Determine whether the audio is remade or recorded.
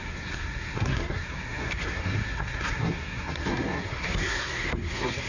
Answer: remade